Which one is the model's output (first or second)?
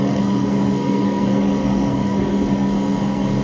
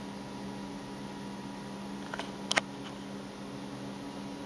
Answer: first